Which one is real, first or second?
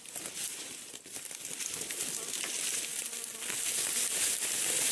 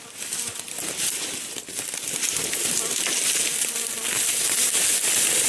second